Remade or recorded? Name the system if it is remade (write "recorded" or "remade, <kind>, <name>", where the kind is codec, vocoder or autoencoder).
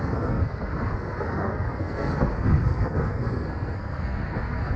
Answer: remade, codec, SNAC